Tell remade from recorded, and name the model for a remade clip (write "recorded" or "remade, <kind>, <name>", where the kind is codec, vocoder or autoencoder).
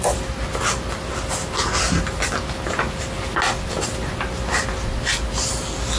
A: recorded